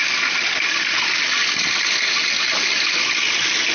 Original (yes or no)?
yes